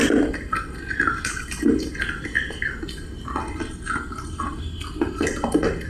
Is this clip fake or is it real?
real